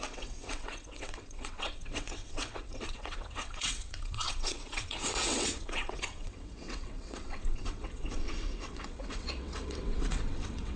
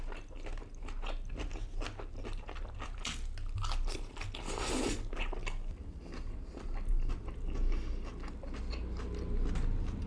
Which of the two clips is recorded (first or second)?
second